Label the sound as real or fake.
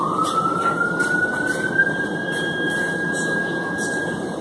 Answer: fake